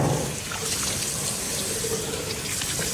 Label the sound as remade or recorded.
recorded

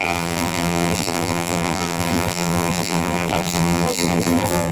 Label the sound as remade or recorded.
remade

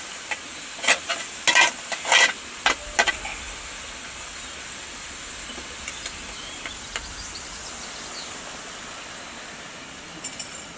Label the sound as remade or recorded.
recorded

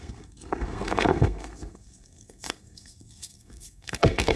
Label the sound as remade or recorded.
remade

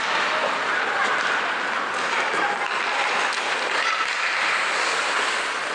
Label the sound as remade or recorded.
recorded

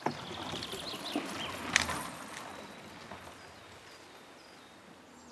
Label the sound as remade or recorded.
recorded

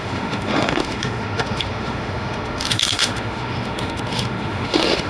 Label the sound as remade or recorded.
remade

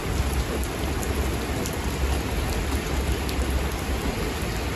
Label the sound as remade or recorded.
recorded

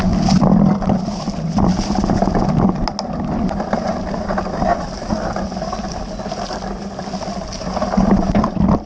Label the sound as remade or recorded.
recorded